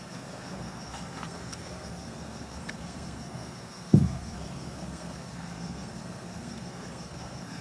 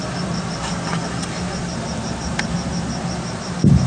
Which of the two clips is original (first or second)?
second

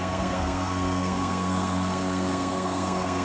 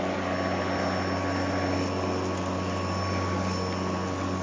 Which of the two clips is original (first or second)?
second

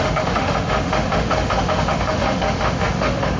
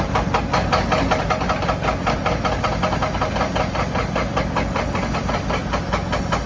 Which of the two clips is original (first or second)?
second